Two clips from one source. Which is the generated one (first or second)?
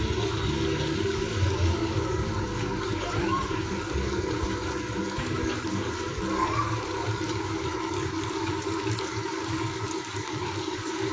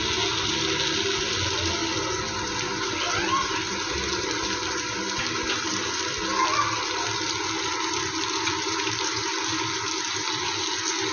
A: first